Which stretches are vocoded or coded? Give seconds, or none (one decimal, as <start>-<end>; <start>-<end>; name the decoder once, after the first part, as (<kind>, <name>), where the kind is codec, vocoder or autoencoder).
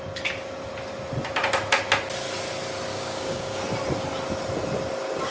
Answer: 2.9-3.6 (codec, DAC)